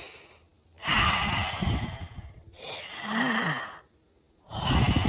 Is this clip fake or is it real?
real